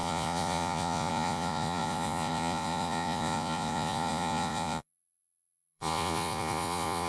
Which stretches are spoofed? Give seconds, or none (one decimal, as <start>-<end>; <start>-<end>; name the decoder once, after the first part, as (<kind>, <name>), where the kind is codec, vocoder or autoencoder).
0.0-7.1 (vocoder, Vocos)